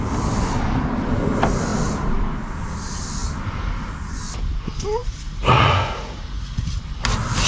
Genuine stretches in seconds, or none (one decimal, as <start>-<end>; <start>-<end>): 0.0-5.0; 6.8-7.5